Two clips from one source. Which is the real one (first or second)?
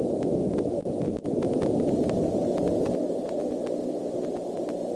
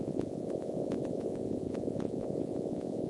first